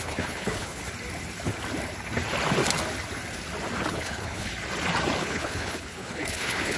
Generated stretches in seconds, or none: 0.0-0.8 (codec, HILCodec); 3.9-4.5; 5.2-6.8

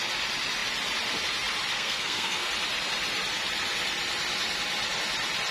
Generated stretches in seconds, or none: 1.7-2.5 (codec, SNAC)

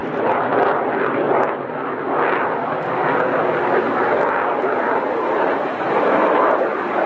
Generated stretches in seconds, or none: none

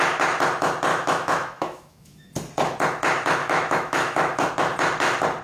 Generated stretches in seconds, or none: 0.9-2.3 (autoencoder, DAC-VAE); 3.4-4.5

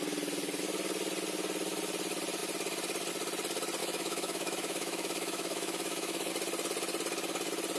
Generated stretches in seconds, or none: 3.8-6.3 (autoencoder, DAC-VAE)

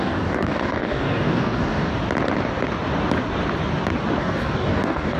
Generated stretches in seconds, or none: 0.0-1.9 (codec, DAC); 4.2-5.2

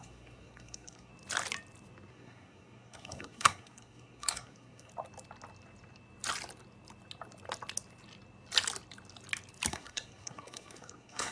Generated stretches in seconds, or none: 0.0-1.1 (codec, SNAC); 2.1-4.9; 9.7-11.3

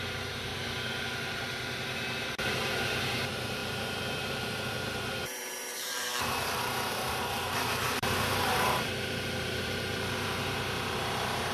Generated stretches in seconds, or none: 0.0-0.5 (vocoder, BigVGAN v2); 1.1-11.5